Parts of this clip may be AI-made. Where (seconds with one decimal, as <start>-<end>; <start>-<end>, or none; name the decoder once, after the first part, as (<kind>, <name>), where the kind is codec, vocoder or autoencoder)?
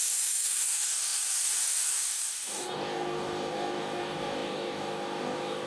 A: 0.0-5.7 (codec, DAC)